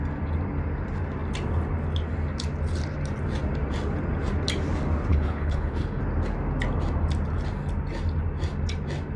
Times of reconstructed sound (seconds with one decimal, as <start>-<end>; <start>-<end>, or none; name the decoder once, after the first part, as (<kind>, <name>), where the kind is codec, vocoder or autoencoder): 5.1-6.0 (codec, HILCodec)